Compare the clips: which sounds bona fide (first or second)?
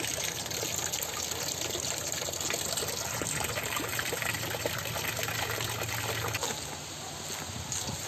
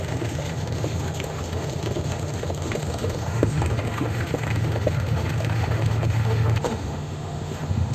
first